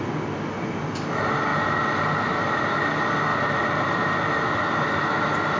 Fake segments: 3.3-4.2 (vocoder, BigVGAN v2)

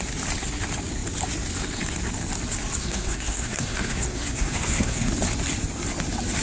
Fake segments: 2.8-5.1 (codec, SNAC)

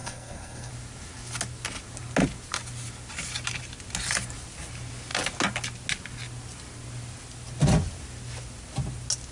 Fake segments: 0.0-0.7 (codec, SNAC)

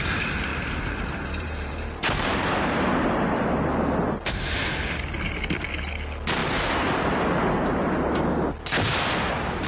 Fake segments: 0.5-3.4 (vocoder, BigVGAN v2)